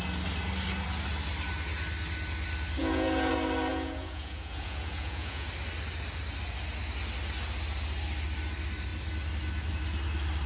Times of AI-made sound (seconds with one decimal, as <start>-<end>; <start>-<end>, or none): 2.8-3.3; 3.7-5.5